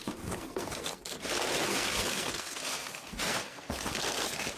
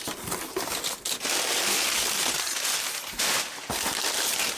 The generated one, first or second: first